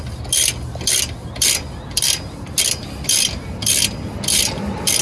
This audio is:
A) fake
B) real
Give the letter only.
B